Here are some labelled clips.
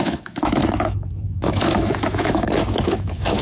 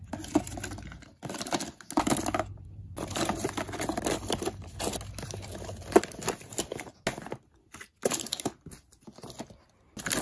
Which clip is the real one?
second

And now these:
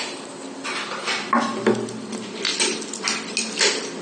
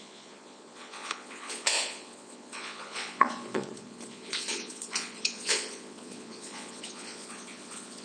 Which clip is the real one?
first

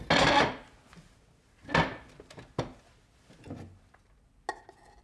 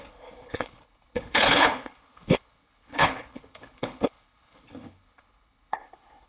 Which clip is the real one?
first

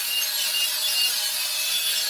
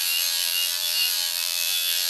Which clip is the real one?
first